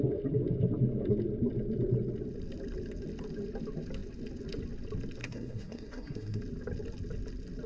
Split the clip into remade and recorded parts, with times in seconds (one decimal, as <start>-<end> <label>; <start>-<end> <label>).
0.0-5.2 recorded; 5.2-6.4 remade; 6.4-7.7 recorded